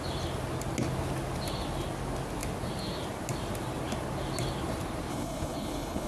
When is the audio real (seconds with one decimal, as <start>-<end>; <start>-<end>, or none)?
0.0-5.1